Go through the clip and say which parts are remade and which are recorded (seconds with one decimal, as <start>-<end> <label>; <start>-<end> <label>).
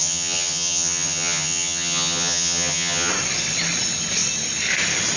0.0-3.1 remade; 3.1-5.2 recorded